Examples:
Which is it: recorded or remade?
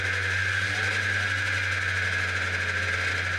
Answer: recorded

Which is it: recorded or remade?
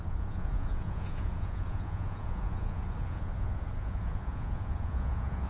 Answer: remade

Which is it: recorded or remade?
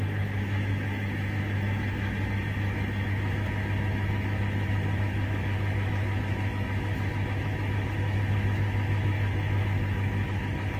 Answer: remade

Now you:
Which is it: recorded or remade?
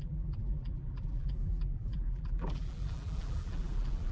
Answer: remade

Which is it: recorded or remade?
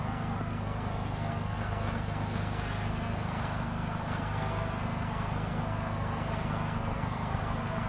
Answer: remade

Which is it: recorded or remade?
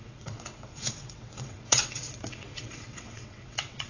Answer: remade